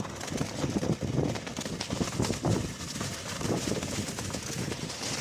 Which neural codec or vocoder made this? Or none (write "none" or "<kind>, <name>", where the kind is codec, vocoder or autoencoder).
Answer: none